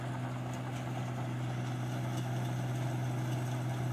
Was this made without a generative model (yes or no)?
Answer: yes